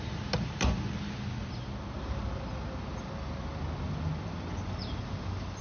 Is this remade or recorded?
recorded